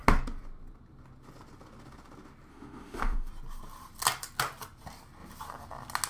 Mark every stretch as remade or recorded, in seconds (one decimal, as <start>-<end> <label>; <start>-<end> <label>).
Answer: 0.0-2.5 recorded; 2.5-3.3 remade; 3.3-6.1 recorded